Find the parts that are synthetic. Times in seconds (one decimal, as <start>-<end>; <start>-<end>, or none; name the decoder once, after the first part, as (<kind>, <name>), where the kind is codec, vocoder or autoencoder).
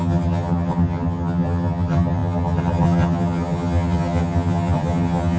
0.0-5.4 (vocoder, HiFi-GAN)